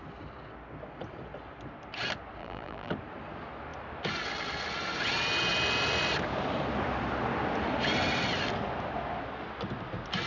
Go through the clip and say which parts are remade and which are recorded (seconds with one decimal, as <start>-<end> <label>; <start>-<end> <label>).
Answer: 0.0-2.4 recorded; 2.4-2.9 remade; 2.9-10.3 recorded